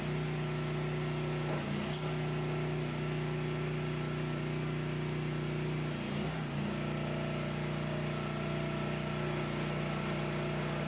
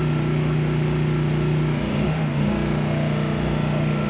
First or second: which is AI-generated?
second